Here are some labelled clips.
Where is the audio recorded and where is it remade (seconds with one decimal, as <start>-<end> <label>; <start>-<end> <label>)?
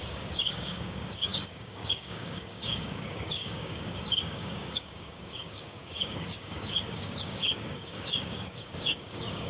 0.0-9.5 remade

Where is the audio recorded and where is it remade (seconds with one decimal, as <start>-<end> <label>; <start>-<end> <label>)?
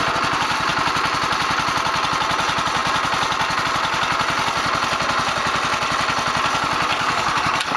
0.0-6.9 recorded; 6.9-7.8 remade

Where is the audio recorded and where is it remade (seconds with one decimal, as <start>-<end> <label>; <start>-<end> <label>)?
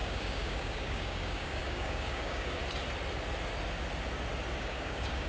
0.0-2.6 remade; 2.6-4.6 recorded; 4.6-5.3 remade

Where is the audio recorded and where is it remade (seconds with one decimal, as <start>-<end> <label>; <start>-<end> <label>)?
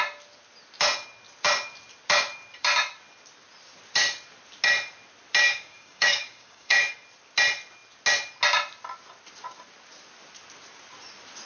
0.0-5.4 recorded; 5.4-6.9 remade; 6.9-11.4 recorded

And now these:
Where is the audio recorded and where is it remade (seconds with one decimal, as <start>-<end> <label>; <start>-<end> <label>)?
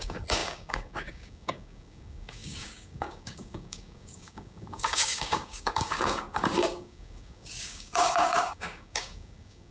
0.0-9.7 remade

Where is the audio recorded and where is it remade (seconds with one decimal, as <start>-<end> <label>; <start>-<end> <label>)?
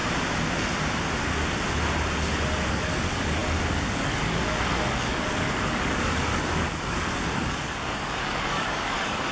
0.0-2.7 recorded; 2.7-9.3 remade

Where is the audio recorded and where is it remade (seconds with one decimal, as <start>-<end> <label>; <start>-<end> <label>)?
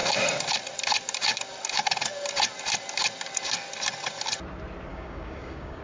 0.0-4.9 recorded; 4.9-5.8 remade